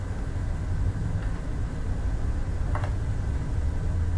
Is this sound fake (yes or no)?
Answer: no